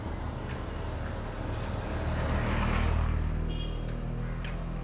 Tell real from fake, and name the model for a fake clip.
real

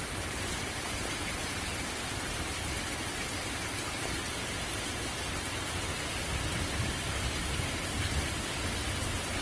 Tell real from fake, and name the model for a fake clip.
real